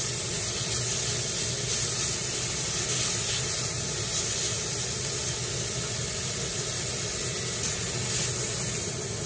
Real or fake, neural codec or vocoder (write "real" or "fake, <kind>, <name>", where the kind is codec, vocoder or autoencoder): real